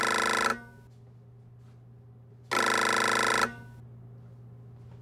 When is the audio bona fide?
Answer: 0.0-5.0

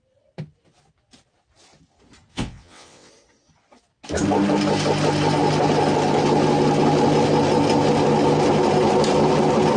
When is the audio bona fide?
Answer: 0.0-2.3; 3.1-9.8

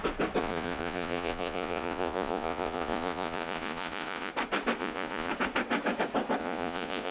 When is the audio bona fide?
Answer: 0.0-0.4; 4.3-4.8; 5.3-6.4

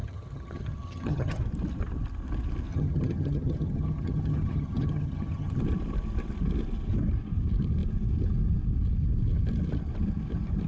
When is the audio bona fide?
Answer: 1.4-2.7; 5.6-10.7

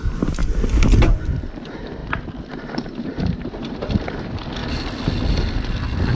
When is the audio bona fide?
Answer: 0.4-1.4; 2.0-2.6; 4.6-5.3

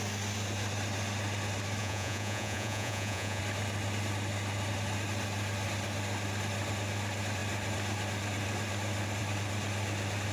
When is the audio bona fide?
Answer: 0.0-1.8; 3.4-10.3